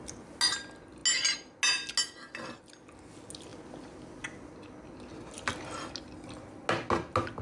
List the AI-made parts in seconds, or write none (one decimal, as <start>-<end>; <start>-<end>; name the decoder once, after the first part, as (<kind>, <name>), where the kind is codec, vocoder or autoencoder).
none